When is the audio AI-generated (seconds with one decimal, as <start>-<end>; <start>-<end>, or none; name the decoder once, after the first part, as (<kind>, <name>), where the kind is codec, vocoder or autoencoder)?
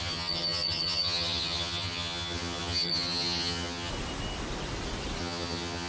0.0-3.9 (vocoder, HiFi-GAN); 5.2-5.9